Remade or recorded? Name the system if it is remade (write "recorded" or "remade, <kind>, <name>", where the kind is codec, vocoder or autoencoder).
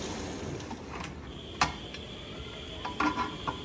recorded